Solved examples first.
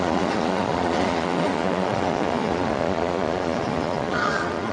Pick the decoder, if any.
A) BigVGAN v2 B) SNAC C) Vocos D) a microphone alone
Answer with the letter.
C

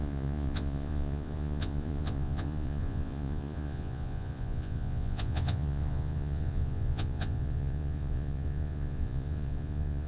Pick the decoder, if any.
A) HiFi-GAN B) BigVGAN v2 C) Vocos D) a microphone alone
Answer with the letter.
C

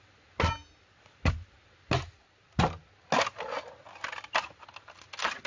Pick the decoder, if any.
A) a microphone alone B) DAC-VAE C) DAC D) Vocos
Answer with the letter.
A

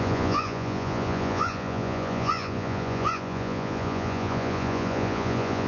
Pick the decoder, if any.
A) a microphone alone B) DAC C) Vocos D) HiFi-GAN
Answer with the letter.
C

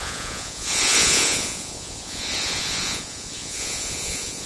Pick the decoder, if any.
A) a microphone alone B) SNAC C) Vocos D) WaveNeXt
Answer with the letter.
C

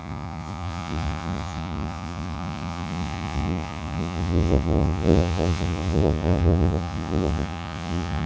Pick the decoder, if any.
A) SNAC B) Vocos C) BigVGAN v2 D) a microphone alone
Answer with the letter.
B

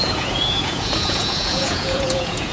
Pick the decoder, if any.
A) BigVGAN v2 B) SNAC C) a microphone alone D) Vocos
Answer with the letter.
D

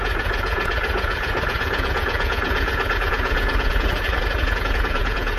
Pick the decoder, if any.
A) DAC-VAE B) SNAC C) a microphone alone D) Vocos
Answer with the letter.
D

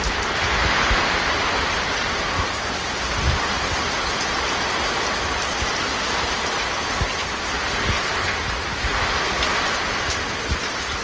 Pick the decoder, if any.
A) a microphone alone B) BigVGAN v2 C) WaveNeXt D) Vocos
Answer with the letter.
A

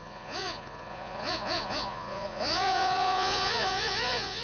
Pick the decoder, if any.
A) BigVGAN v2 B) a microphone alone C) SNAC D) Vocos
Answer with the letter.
D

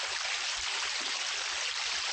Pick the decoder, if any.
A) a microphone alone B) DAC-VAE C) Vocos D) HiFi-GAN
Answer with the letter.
A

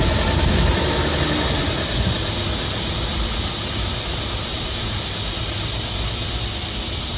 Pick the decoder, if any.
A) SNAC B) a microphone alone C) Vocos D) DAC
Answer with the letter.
B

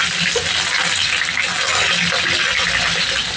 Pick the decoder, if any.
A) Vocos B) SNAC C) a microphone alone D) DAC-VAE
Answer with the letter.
C